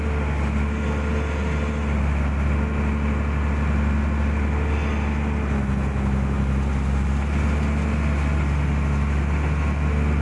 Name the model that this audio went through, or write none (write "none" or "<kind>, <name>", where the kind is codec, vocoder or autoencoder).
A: none